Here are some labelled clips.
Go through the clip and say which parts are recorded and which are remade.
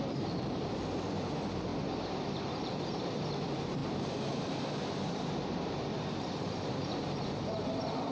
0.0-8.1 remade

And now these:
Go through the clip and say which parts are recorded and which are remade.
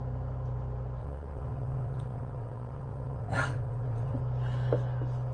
0.0-1.0 recorded; 1.0-4.2 remade; 4.2-5.3 recorded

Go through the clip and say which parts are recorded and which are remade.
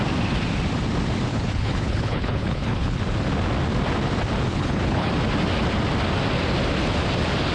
0.0-1.3 recorded; 1.3-3.0 remade; 3.0-4.5 recorded; 4.5-5.1 remade; 5.1-7.5 recorded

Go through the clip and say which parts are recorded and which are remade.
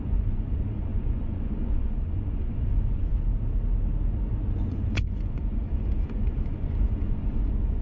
0.0-3.1 remade; 3.1-4.7 recorded; 4.7-7.8 remade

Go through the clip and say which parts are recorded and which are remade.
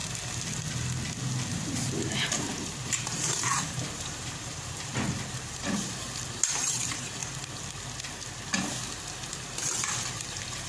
0.0-1.5 recorded; 1.5-7.2 remade; 7.2-9.3 recorded; 9.3-10.7 remade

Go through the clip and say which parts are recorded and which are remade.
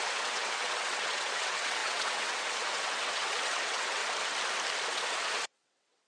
0.0-4.0 remade; 4.0-4.9 recorded; 4.9-6.1 remade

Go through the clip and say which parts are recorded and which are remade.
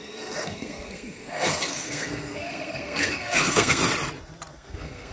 0.0-3.8 remade; 3.8-4.5 recorded; 4.5-5.1 remade